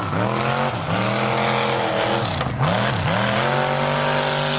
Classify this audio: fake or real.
real